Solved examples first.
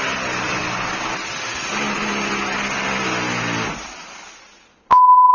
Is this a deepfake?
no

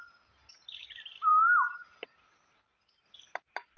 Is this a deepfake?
no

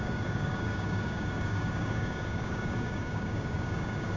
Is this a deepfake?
yes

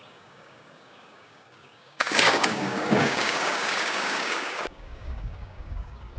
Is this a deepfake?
yes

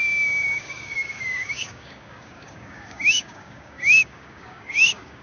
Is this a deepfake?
yes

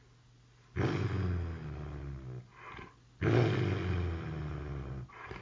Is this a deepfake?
no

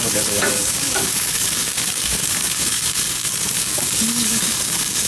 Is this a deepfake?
yes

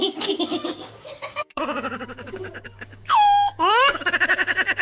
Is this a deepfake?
yes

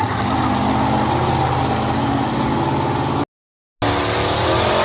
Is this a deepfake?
no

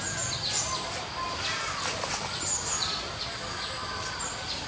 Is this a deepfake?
no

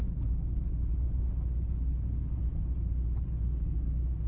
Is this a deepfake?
no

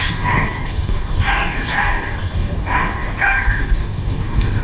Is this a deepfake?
yes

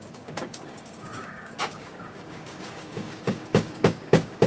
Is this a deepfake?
yes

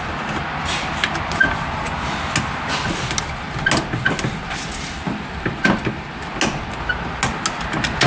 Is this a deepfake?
no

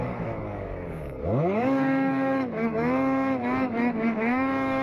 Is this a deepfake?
yes